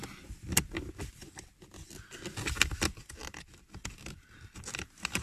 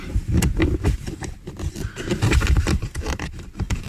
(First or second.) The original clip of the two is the first